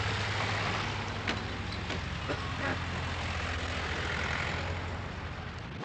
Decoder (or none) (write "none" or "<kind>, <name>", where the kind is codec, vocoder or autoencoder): none